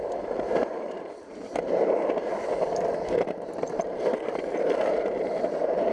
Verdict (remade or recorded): remade